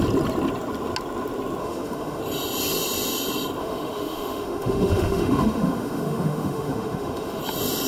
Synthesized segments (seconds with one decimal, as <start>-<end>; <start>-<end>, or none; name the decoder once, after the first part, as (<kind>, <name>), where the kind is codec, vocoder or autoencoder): 1.6-2.2 (autoencoder, DAC-VAE); 3.6-7.4